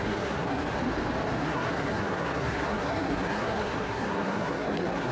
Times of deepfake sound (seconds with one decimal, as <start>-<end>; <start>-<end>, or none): 0.0-0.8; 1.4-5.1